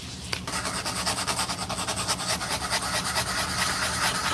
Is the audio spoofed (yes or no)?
no